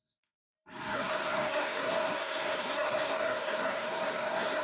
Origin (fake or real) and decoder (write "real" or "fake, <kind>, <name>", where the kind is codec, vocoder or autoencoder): fake, codec, SNAC